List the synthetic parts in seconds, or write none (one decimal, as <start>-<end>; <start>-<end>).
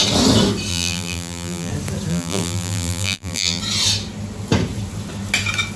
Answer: 0.7-1.7; 2.1-3.6